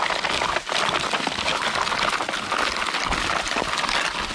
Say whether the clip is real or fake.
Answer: real